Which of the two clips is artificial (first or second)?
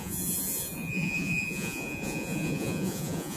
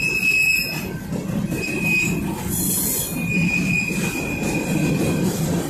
first